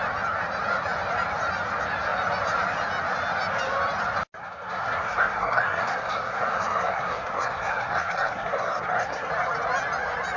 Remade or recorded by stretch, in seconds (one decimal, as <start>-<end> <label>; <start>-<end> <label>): 0.0-4.4 recorded; 4.4-9.3 remade; 9.3-10.4 recorded